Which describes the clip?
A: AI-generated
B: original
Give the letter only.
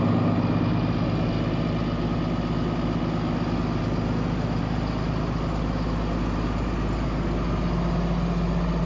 B